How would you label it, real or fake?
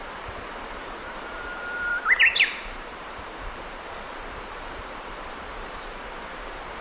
fake